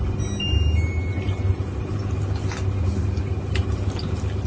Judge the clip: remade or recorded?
recorded